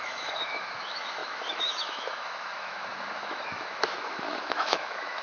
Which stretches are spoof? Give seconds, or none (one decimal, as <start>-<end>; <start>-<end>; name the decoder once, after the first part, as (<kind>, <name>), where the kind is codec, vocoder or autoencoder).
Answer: 0.0-5.2 (autoencoder, DAC-VAE)